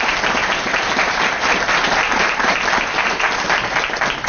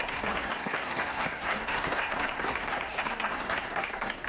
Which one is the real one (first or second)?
first